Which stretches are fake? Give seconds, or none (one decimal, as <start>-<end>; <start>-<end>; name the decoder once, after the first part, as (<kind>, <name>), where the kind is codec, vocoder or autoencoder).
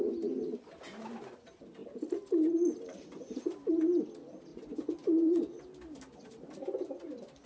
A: 4.5-5.6 (vocoder, Vocos)